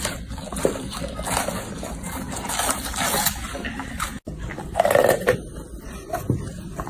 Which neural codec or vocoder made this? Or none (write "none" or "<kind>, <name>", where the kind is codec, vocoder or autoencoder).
none